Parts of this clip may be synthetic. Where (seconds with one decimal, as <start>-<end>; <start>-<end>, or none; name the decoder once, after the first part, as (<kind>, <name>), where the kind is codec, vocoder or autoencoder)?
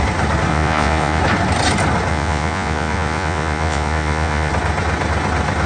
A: 0.5-1.2 (vocoder, Vocos); 2.1-4.5